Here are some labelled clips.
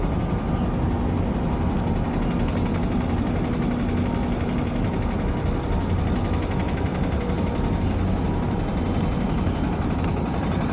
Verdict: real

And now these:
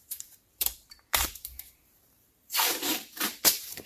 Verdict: fake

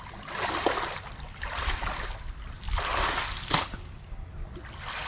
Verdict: real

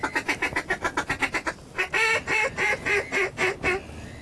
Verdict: real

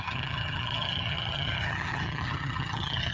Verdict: fake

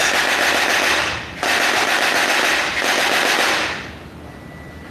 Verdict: real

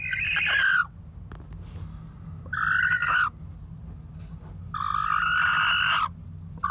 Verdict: real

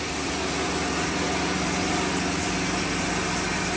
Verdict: real